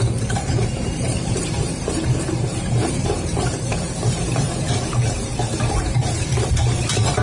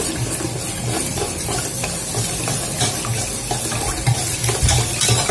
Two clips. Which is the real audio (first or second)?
second